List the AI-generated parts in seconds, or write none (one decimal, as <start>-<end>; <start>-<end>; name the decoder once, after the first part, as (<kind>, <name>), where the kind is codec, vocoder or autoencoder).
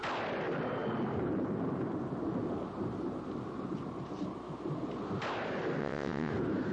5.8-6.3 (vocoder, WaveNeXt)